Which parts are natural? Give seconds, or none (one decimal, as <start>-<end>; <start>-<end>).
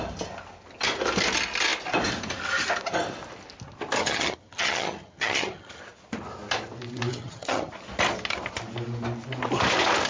0.0-4.0; 5.8-7.1; 7.7-10.1